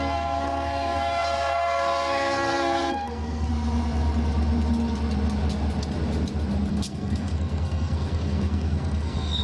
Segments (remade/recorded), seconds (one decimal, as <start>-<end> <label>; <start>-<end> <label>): 0.0-3.5 remade; 3.5-6.7 recorded; 6.7-9.4 remade